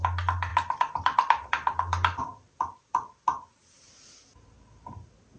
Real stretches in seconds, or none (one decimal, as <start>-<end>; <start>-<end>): 0.0-0.5; 2.8-5.4